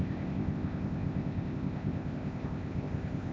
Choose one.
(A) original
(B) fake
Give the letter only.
B